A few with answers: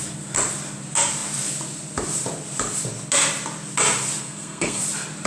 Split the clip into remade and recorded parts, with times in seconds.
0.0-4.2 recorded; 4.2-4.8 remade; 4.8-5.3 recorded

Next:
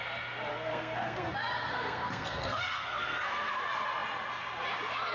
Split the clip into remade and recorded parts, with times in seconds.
0.0-0.5 recorded; 0.5-3.6 remade; 3.6-5.1 recorded

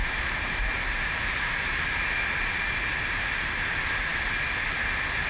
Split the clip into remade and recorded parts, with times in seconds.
0.0-5.3 recorded

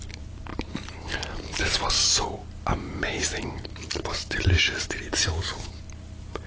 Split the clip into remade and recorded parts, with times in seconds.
0.0-6.5 recorded